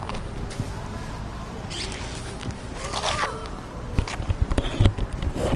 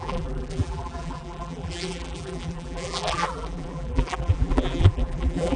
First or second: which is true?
first